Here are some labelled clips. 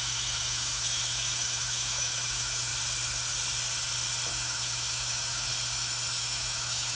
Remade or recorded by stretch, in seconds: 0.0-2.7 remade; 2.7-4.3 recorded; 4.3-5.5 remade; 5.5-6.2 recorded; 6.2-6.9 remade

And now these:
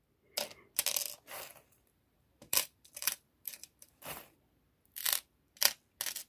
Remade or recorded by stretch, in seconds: 0.0-1.5 recorded; 1.5-4.6 remade; 4.6-6.3 recorded

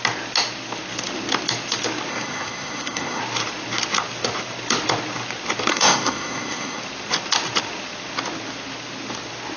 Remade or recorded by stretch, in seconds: 0.0-2.1 recorded; 2.1-3.2 remade; 3.2-5.7 recorded; 5.7-6.8 remade; 6.8-9.6 recorded

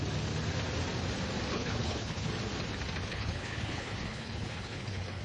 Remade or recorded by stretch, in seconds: 0.0-1.5 recorded; 1.5-2.3 remade; 2.3-3.1 recorded; 3.1-5.2 remade